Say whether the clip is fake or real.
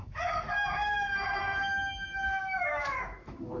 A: fake